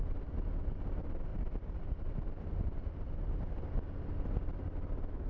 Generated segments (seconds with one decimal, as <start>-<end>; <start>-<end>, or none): none